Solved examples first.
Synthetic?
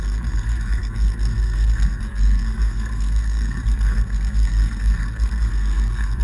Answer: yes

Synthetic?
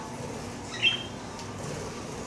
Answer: no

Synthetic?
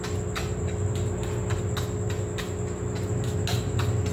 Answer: no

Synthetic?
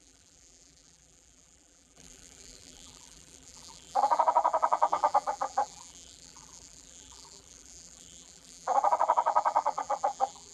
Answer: yes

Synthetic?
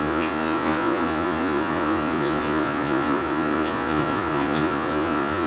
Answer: yes